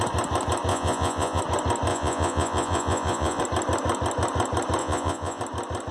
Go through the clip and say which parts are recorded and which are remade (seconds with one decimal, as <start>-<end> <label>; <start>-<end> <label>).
0.0-0.7 recorded; 0.7-1.4 remade; 1.4-1.9 recorded; 1.9-3.4 remade; 3.4-4.8 recorded; 4.8-5.4 remade; 5.4-5.9 recorded